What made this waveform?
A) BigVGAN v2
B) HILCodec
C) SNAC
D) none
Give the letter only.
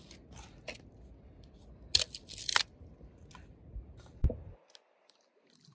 D